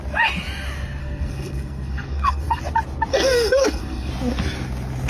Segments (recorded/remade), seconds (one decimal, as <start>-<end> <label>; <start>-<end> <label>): 0.0-1.0 recorded; 1.0-2.6 remade; 2.6-3.1 recorded; 3.1-4.1 remade; 4.1-5.1 recorded